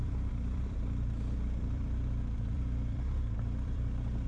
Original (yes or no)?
no